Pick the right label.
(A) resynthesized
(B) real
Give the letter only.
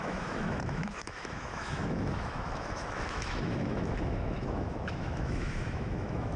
A